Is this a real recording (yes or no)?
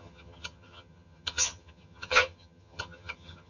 no